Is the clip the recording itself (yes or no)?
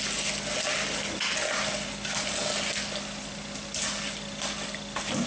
yes